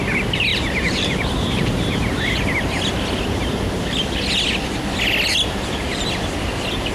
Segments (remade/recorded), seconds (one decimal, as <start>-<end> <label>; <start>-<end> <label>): 0.0-0.5 recorded; 0.5-2.4 remade; 2.4-6.9 recorded